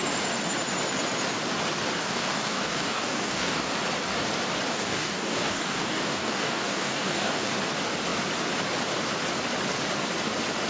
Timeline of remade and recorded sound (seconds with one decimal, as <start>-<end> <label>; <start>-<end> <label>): 0.0-2.0 recorded; 2.0-3.7 remade; 3.7-4.7 recorded; 4.7-7.5 remade; 7.5-10.7 recorded